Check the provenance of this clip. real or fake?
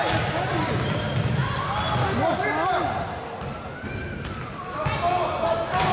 real